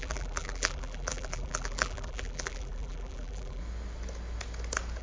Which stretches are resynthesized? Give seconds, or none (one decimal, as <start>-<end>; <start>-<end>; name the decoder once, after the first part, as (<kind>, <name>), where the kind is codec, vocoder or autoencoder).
0.0-3.6 (vocoder, BigVGAN v2)